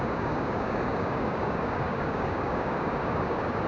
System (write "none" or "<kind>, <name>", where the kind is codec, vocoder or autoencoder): codec, DAC